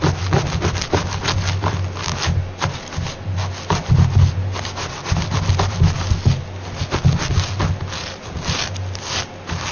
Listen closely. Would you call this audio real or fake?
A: real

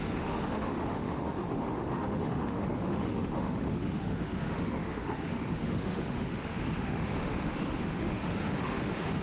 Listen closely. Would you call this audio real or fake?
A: fake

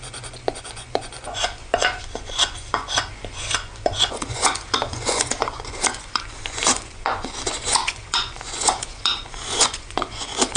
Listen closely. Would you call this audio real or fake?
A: fake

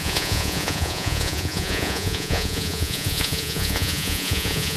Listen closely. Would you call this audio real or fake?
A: fake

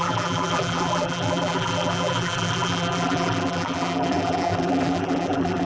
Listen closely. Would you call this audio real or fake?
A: fake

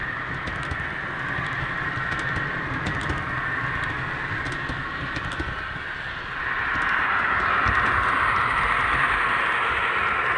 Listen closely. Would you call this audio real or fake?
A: real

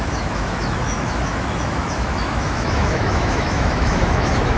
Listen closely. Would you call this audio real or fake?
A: fake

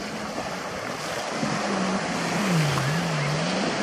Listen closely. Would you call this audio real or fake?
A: real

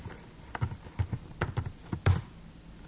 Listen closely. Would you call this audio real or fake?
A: real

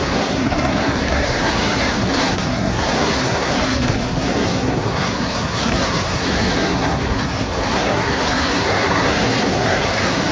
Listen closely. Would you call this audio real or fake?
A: fake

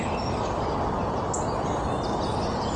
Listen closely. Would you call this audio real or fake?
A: real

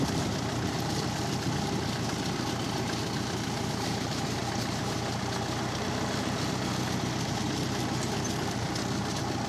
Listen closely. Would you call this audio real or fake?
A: real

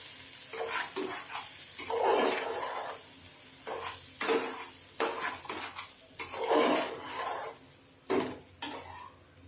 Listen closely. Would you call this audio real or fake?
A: real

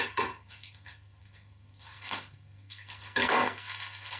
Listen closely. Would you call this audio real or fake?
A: fake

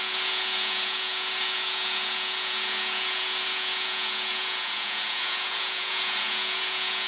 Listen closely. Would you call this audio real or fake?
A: fake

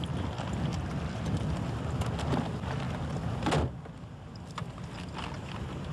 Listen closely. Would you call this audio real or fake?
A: real